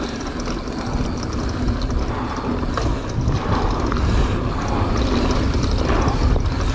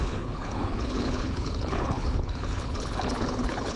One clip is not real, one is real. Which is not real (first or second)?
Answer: second